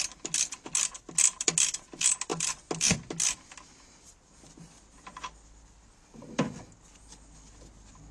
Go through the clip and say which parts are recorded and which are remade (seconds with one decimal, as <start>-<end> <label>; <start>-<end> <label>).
0.0-8.1 recorded